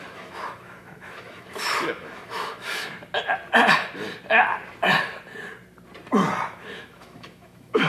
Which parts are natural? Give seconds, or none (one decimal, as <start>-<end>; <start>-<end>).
2.9-6.5